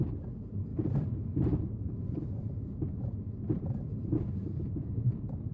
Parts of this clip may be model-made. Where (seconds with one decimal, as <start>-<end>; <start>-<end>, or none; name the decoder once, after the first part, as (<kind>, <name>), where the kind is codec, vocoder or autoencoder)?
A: 0.7-1.5 (vocoder, BigVGAN v2); 2.4-5.1